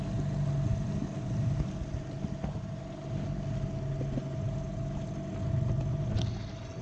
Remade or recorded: recorded